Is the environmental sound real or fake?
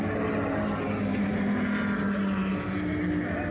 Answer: real